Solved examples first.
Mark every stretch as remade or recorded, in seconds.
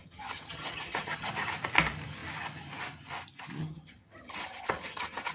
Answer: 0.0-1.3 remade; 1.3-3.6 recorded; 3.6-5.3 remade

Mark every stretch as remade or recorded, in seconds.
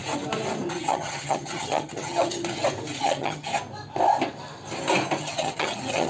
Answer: 0.0-0.7 recorded; 0.7-2.4 remade; 2.4-3.0 recorded; 3.0-3.5 remade; 3.5-5.2 recorded; 5.2-6.1 remade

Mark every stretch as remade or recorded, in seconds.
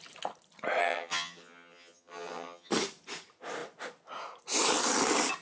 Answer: 0.0-0.8 recorded; 0.8-2.7 remade; 2.7-5.4 recorded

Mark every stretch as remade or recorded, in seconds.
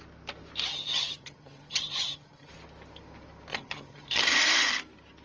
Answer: 0.0-0.7 recorded; 0.7-2.5 remade; 2.5-3.5 recorded; 3.5-4.2 remade; 4.2-5.2 recorded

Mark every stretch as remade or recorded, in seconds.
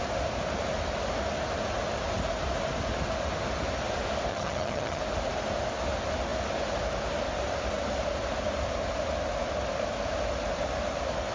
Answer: 0.0-4.3 recorded; 4.3-5.0 remade; 5.0-11.3 recorded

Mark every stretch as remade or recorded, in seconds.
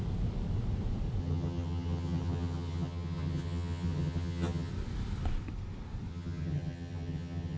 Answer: 0.0-1.2 recorded; 1.2-4.7 remade; 4.7-6.1 recorded; 6.1-7.6 remade